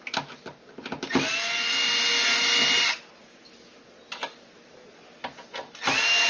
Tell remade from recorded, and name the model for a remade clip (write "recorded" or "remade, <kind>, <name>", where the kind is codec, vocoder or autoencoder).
recorded